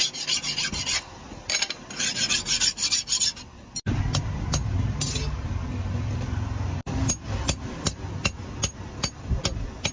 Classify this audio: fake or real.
real